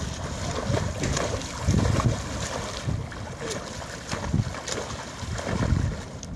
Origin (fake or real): real